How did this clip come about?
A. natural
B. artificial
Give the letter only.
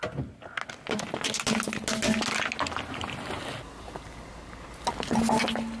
A